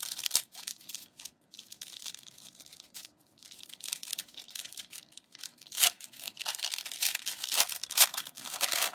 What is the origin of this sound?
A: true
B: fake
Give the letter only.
B